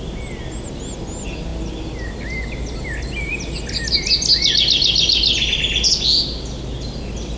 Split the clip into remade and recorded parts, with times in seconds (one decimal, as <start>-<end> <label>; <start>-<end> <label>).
0.0-7.4 recorded